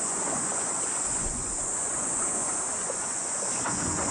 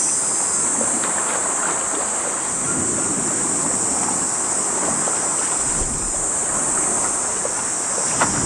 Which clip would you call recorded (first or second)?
second